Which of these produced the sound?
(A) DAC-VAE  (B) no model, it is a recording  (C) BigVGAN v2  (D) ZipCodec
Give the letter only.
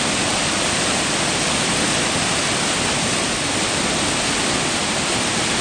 B